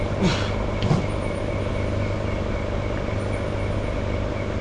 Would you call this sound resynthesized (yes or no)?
no